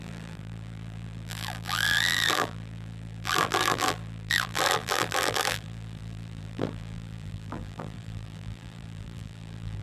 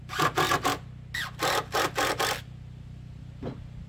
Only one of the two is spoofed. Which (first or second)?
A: first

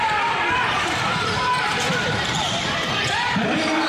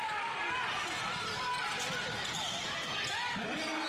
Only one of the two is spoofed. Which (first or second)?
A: first